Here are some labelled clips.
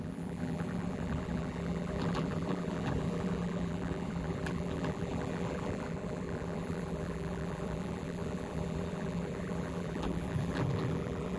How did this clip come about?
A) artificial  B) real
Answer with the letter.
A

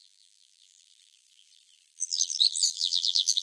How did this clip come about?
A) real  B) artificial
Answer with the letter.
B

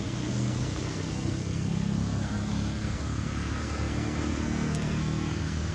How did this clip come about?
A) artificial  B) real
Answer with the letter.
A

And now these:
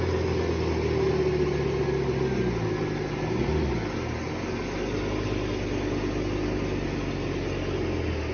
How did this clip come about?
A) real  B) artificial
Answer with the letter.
A